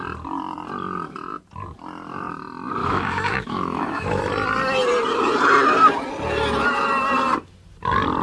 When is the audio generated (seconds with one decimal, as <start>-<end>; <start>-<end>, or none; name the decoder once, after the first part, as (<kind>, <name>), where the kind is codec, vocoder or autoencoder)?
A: 2.8-4.2 (autoencoder, DAC-VAE)